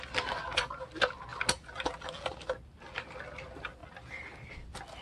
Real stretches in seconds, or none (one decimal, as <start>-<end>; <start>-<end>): 0.0-5.0

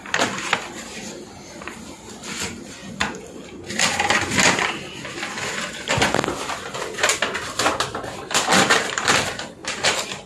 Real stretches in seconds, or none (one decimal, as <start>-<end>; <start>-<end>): 0.0-8.5; 9.1-9.6

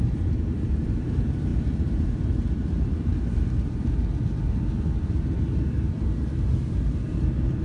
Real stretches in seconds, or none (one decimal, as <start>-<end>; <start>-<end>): none

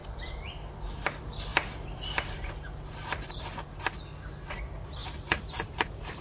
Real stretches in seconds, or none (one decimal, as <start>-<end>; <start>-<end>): 1.1-1.5; 2.5-6.2